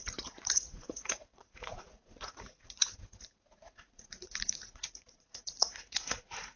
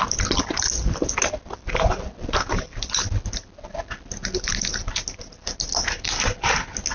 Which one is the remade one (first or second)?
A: first